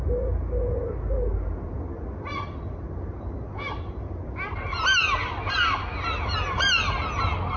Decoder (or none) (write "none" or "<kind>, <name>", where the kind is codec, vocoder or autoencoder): none